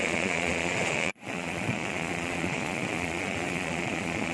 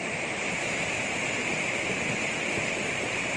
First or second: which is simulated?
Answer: first